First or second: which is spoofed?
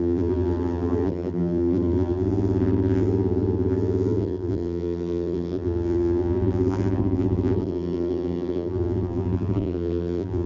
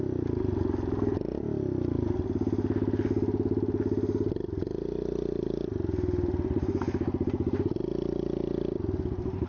first